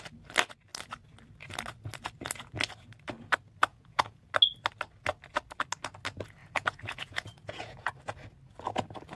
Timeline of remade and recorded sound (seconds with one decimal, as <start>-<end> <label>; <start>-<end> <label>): 0.0-3.7 recorded; 3.7-4.3 remade; 4.3-6.4 recorded; 6.4-7.9 remade; 7.9-9.2 recorded